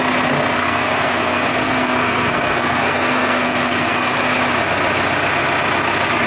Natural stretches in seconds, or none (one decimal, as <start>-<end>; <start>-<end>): 0.0-0.6; 4.4-6.3